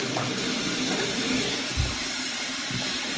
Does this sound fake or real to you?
real